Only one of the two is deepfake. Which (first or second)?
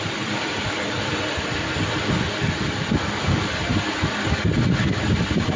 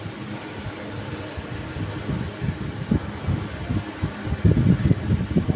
first